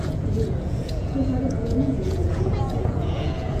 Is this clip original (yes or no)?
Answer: no